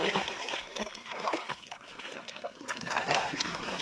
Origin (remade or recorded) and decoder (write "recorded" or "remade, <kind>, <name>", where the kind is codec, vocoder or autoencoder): remade, codec, SNAC